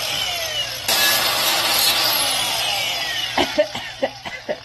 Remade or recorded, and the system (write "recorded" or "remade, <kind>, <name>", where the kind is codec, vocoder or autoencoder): recorded